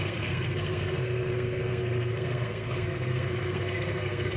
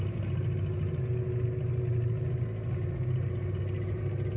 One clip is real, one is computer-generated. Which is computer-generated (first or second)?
first